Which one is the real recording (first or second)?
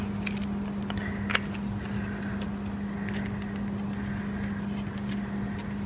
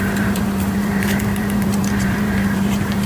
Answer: first